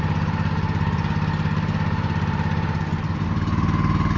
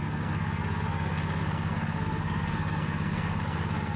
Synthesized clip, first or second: second